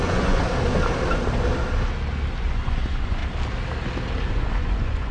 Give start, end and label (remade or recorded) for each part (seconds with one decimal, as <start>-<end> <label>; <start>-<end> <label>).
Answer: 0.0-0.4 remade; 0.4-2.4 recorded; 2.4-3.2 remade; 3.2-4.3 recorded; 4.3-5.1 remade